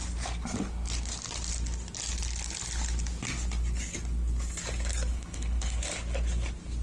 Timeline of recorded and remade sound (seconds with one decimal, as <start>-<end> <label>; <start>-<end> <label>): 0.0-5.1 recorded; 5.1-5.8 remade; 5.8-6.8 recorded

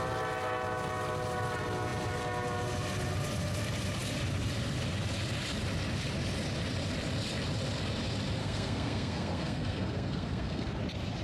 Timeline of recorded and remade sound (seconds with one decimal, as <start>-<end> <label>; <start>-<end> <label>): 0.0-8.4 recorded; 8.4-10.7 remade; 10.7-11.2 recorded

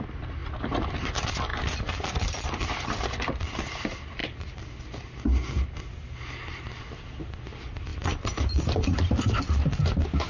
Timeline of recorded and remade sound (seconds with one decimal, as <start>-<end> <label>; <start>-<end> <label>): 0.0-10.3 recorded

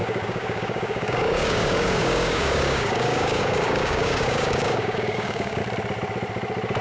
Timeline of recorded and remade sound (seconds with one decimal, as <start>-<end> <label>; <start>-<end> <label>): 0.0-5.6 remade; 5.6-6.8 recorded

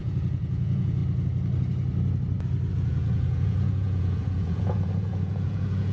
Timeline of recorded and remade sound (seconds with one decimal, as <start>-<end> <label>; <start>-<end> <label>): 0.0-1.0 remade; 1.0-2.7 recorded; 2.7-5.9 remade

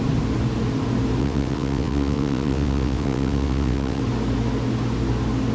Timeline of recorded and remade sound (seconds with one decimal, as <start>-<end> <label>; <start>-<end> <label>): 0.0-1.2 recorded; 1.2-4.0 remade; 4.0-5.5 recorded